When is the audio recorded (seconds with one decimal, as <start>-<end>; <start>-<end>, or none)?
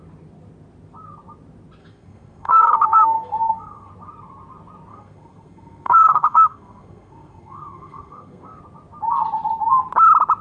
0.0-1.8; 3.9-4.9; 8.6-10.4